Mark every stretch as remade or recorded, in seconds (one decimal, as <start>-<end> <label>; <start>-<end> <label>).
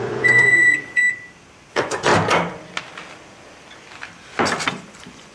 0.0-1.0 remade; 1.0-1.7 recorded; 1.7-2.1 remade; 2.1-4.7 recorded; 4.7-5.3 remade